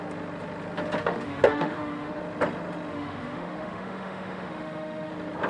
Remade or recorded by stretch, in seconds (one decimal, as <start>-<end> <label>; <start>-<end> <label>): 0.0-1.0 recorded; 1.0-2.2 remade; 2.2-2.9 recorded; 2.9-5.1 remade; 5.1-5.5 recorded